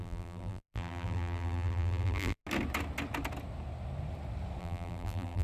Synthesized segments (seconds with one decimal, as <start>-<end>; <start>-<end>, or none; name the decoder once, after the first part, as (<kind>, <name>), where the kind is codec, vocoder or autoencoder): 0.0-2.4 (vocoder, BigVGAN v2); 4.6-5.4